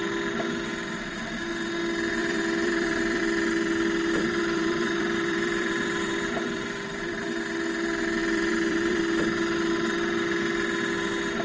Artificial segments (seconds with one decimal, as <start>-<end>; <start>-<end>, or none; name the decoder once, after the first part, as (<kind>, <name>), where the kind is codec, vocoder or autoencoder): 2.2-3.2 (vocoder, BigVGAN v2); 4.2-7.2; 8.2-9.0